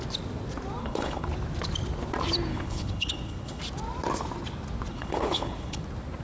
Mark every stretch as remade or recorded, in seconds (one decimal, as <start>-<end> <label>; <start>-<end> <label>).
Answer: 0.0-0.8 recorded; 0.8-1.3 remade; 1.3-2.5 recorded; 2.5-3.6 remade; 3.6-4.9 recorded; 4.9-5.8 remade; 5.8-6.2 recorded